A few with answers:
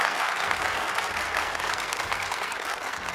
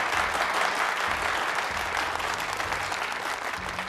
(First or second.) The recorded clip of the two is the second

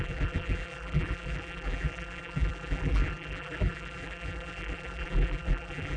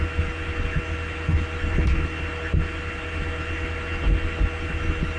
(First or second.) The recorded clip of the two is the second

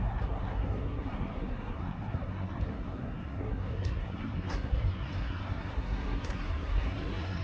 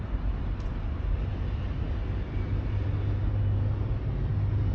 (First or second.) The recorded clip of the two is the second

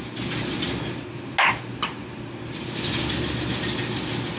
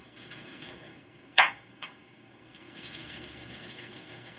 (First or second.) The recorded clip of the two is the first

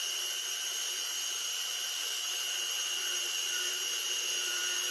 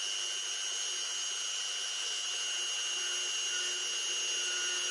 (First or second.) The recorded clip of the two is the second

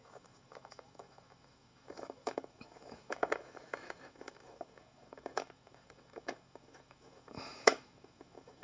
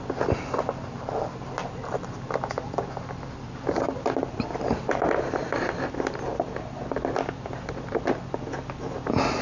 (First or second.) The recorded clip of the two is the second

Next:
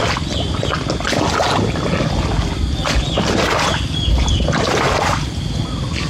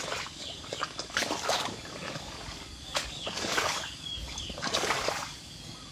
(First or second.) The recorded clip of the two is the first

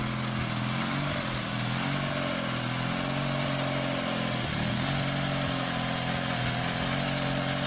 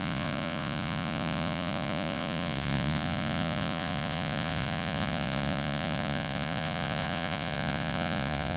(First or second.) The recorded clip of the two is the first